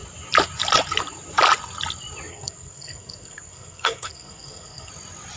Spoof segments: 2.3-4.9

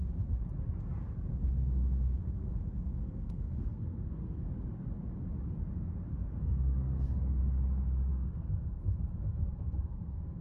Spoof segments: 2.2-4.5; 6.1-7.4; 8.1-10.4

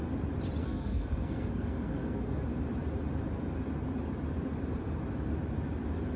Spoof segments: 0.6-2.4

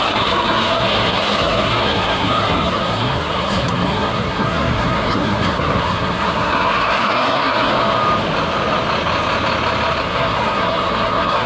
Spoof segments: 0.0-7.7; 10.0-11.5

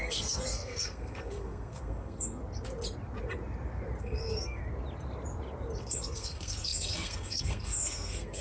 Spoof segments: 0.0-2.4; 4.0-4.6; 5.8-8.4

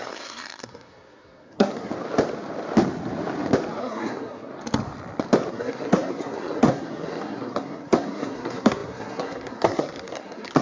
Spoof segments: 0.0-1.9; 3.8-4.5; 5.5-10.6